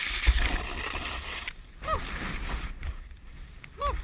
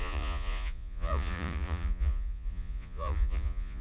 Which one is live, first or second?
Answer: first